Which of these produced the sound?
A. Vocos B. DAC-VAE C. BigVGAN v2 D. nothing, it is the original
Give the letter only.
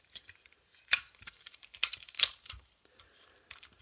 C